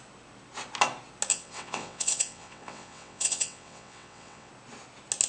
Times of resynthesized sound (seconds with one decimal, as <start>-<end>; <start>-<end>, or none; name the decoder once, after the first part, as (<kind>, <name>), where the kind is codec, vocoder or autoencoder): 1.3-4.5 (vocoder, WaveNeXt)